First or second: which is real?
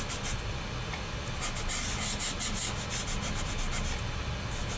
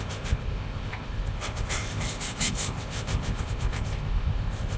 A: first